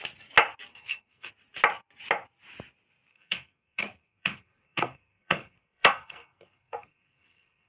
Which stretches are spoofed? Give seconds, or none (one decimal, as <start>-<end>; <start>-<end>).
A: 0.7-1.3; 3.1-7.7

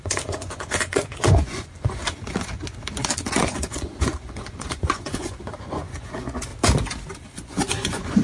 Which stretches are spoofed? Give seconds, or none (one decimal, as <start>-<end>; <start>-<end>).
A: 0.0-2.0; 3.4-6.5; 7.4-8.2

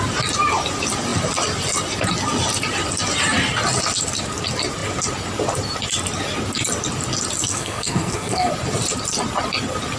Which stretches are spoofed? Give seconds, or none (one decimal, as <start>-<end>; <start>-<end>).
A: 7.5-8.5

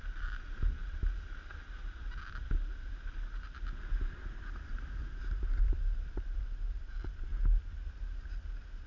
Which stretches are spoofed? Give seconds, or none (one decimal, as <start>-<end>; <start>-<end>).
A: 5.0-6.7

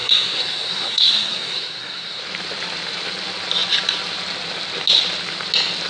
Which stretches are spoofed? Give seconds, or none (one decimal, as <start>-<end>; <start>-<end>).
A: 0.0-2.2

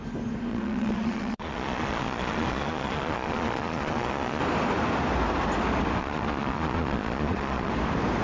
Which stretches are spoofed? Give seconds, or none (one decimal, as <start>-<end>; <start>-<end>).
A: 0.5-4.4; 6.0-7.7